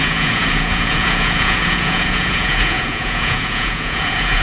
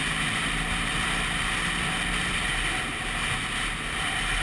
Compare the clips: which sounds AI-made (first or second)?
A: first